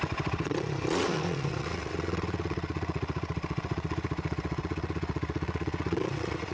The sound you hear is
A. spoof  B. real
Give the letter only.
A